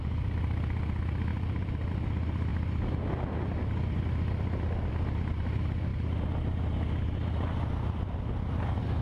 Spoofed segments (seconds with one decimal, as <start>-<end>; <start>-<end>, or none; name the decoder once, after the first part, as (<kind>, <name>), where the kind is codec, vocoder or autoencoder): 1.3-1.9 (vocoder, BigVGAN v2)